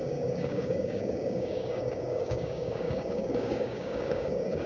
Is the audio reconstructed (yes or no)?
yes